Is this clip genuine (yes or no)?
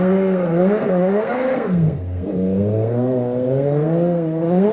no